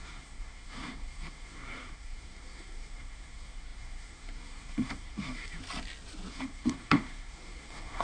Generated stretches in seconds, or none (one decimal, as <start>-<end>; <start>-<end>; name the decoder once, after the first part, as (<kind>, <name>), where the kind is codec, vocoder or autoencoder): 0.0-5.6 (codec, SNAC); 6.3-8.0